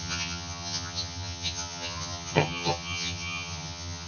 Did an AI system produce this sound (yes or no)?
yes